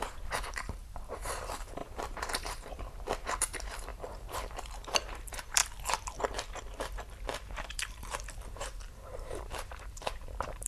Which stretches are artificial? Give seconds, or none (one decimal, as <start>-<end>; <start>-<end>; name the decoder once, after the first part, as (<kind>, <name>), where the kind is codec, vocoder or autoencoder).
0.0-5.6 (vocoder, BigVGAN v2); 7.5-10.7